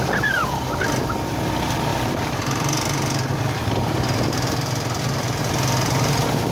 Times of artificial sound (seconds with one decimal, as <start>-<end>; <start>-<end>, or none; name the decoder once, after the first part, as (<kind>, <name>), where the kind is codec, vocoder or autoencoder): 1.9-5.4 (vocoder, BigVGAN v2)

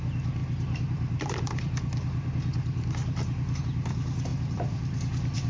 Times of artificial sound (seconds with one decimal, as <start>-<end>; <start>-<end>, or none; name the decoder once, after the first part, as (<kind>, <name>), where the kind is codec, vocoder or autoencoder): 0.4-3.6 (vocoder, BigVGAN v2); 4.3-5.5

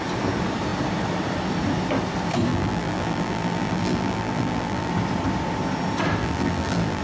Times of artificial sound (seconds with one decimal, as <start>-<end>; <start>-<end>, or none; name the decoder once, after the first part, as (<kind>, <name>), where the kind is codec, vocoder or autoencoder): 2.5-4.9 (vocoder, BigVGAN v2); 6.2-7.0

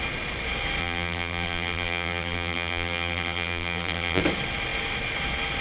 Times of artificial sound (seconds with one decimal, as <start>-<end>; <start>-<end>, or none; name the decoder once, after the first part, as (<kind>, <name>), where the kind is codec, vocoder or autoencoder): 0.8-4.2 (vocoder, BigVGAN v2)

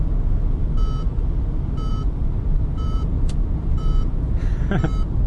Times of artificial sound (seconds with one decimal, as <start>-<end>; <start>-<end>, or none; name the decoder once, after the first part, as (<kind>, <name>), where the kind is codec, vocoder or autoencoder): 1.9-5.3 (vocoder, BigVGAN v2)

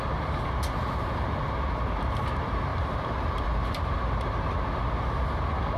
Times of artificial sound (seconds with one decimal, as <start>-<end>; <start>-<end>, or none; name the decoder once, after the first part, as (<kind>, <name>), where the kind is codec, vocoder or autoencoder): 2.7-4.6 (vocoder, BigVGAN v2)

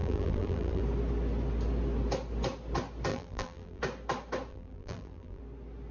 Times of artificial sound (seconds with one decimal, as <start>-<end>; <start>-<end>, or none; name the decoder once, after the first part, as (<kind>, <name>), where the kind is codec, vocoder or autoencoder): 0.0-0.8 (vocoder, BigVGAN v2); 3.1-3.8; 4.5-5.4